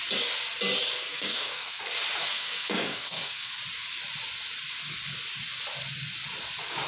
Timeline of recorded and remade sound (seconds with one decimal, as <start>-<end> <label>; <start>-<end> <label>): 0.0-1.1 recorded; 1.1-1.8 remade; 1.8-2.2 recorded; 2.2-3.5 remade; 3.5-6.9 recorded